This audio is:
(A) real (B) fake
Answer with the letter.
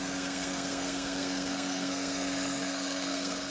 B